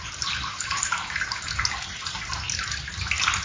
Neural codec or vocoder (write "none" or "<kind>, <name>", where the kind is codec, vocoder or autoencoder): none